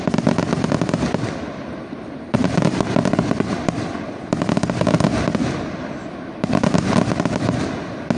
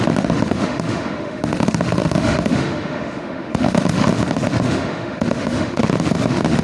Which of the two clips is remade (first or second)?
second